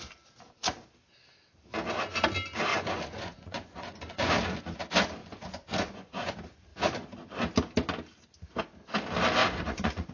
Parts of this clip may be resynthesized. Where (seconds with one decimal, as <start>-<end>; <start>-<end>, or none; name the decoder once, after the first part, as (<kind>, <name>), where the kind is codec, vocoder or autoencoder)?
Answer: 2.7-4.3 (vocoder, Vocos); 5.2-6.3; 9.4-10.1